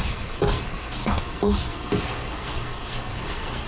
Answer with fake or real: fake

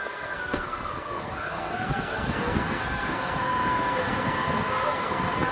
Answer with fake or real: fake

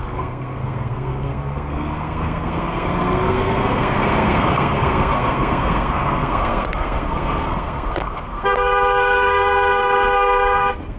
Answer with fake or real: fake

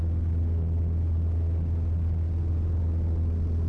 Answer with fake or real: real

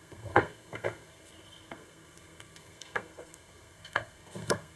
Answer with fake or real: fake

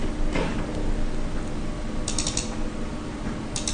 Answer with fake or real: real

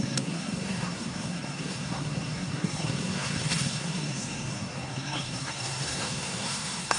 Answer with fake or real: fake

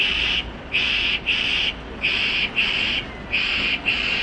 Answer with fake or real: real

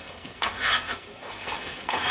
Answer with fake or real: fake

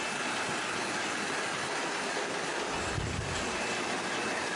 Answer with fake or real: real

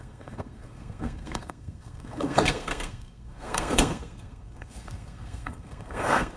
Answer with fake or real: fake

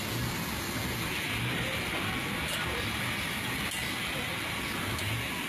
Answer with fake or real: real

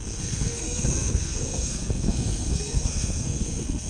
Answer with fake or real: fake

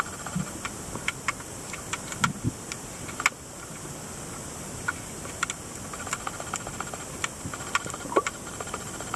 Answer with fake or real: real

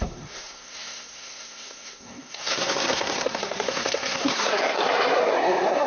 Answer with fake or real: fake